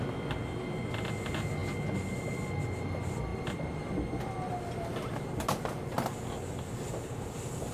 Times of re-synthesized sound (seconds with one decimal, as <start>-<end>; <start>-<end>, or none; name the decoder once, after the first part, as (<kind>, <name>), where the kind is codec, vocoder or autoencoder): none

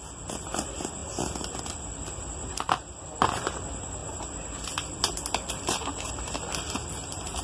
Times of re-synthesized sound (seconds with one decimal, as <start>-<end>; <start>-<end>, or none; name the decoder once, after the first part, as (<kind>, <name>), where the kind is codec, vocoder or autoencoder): 0.0-1.0 (vocoder, BigVGAN v2); 1.6-4.0; 6.1-7.4

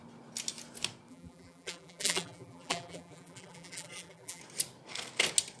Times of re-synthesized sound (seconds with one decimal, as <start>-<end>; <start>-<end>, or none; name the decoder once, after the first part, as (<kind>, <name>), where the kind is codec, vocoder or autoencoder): 1.1-4.4 (vocoder, BigVGAN v2)